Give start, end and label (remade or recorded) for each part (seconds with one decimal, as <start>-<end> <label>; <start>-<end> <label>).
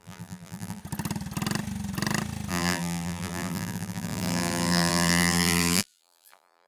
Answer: 0.0-0.8 remade; 0.8-2.5 recorded; 2.5-6.7 remade